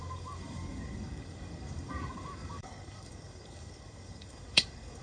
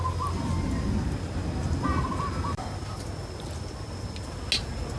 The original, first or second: second